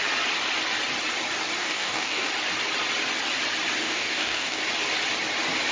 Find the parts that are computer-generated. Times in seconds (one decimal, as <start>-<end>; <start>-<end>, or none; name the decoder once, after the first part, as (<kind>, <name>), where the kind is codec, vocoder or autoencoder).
1.6-2.3 (codec, DAC); 3.8-4.6